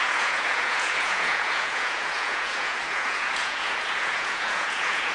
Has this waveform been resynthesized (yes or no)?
yes